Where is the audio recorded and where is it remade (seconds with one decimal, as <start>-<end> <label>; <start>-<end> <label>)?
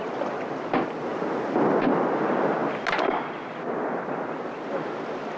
0.0-5.4 recorded